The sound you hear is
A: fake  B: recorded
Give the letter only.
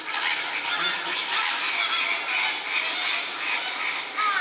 B